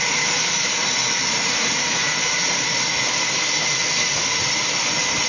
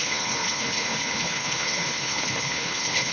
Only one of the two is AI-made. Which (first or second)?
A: second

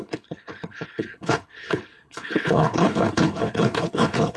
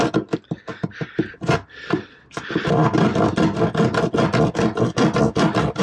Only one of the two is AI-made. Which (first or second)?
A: first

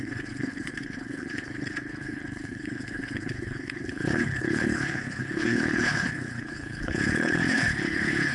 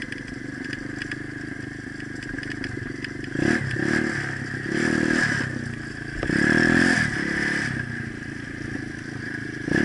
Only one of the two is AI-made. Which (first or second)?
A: first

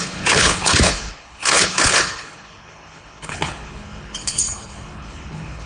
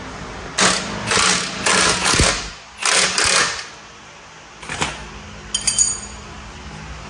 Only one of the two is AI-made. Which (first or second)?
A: first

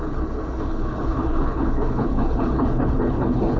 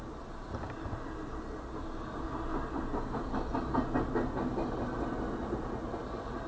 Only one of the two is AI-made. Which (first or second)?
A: first